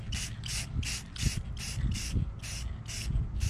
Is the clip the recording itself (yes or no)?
yes